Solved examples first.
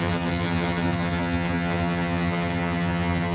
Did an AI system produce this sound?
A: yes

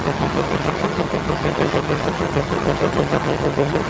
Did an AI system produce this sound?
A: yes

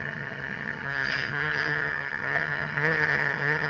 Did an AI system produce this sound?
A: yes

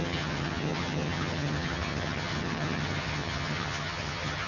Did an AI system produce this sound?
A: yes